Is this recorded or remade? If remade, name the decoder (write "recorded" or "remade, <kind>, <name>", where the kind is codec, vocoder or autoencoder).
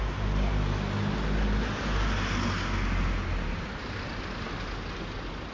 recorded